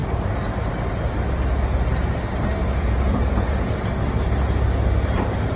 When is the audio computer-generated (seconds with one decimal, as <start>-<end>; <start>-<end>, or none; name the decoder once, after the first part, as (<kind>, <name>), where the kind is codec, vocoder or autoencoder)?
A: 2.6-3.7 (vocoder, Vocos)